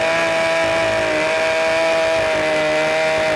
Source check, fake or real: real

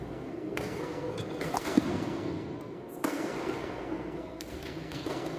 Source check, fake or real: fake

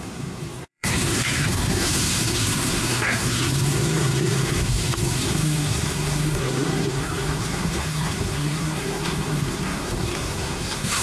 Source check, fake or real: fake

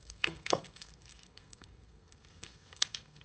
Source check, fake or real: fake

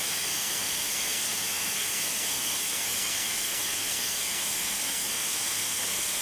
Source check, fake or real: fake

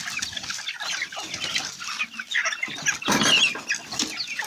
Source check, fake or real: real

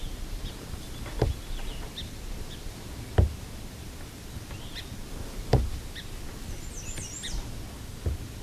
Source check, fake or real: real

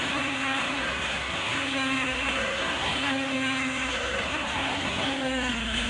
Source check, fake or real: fake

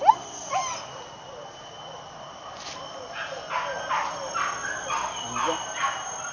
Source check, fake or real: real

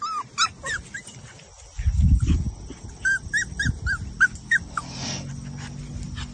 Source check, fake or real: real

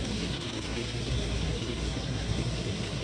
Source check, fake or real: fake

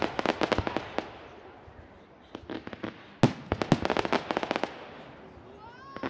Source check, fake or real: real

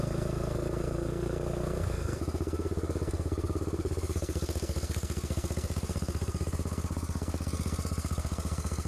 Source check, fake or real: fake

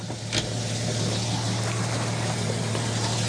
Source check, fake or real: real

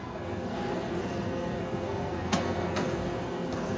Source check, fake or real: fake